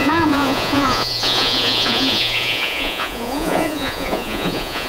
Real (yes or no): no